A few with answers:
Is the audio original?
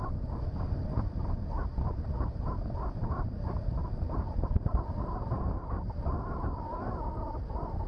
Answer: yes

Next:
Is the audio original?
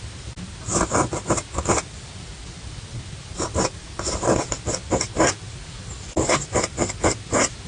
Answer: yes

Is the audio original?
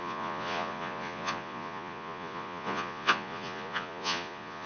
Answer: no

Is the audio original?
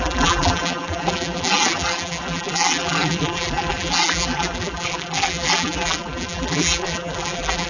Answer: no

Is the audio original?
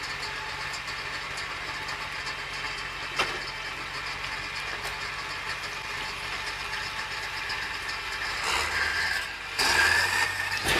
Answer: yes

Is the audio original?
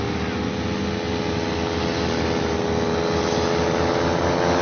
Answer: yes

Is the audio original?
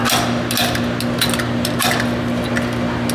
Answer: yes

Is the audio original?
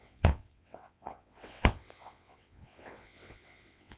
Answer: no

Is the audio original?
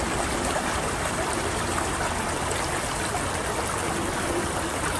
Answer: yes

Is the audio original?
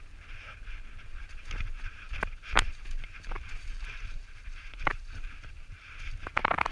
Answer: no